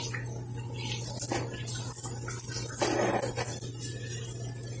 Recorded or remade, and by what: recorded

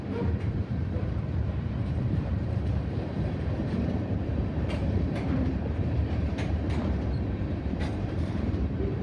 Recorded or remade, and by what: remade, vocoder, BigVGAN v2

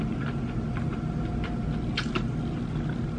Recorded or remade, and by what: recorded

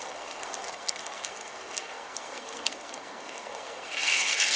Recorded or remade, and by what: remade, codec, SNAC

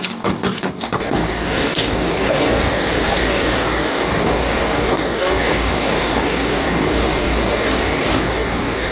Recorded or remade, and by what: remade, codec, DAC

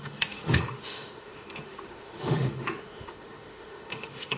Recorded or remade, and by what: remade, autoencoder, DAC-VAE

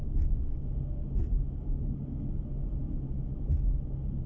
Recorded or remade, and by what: recorded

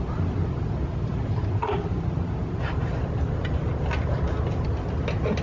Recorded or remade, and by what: recorded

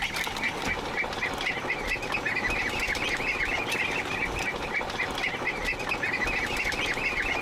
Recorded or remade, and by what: recorded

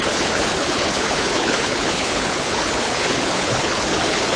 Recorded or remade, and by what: remade, codec, HILCodec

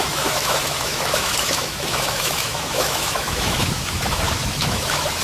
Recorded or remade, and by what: remade, autoencoder, DAC-VAE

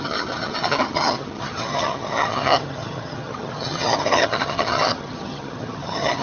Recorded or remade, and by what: remade, vocoder, HiFi-GAN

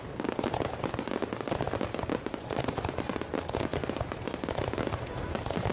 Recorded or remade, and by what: recorded